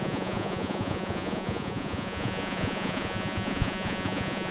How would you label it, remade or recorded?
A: remade